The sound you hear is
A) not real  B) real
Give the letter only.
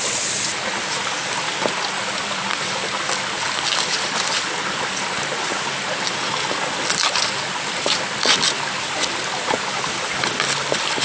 B